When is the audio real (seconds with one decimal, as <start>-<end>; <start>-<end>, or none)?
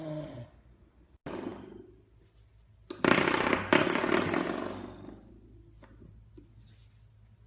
0.0-7.5